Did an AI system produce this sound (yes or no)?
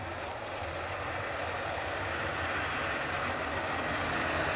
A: no